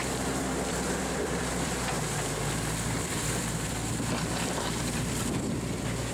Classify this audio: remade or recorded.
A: remade